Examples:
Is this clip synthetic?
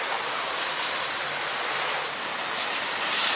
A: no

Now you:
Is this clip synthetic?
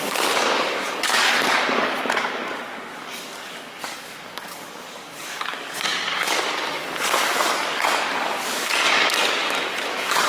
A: yes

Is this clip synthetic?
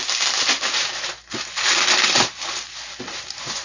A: no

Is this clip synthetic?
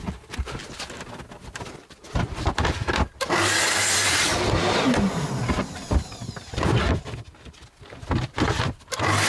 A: no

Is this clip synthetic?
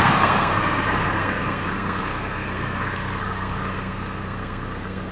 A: yes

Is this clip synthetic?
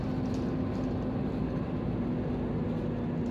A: no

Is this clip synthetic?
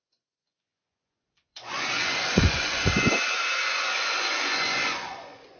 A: yes